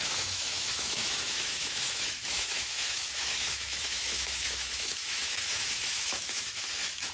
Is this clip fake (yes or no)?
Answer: yes